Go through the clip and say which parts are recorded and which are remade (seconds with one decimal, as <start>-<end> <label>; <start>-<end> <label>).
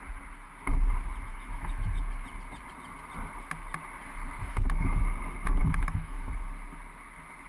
0.0-1.3 recorded; 1.3-2.0 remade; 2.0-4.4 recorded; 4.4-5.0 remade; 5.0-5.6 recorded; 5.6-6.3 remade; 6.3-7.5 recorded